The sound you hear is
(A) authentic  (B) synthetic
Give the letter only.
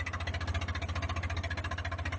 A